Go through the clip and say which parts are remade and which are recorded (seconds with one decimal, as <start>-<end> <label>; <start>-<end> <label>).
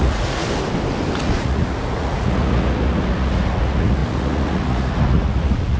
0.0-0.4 remade; 0.4-1.1 recorded; 1.1-5.8 remade